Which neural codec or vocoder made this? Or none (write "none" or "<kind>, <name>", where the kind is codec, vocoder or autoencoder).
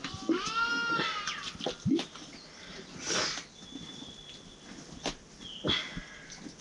none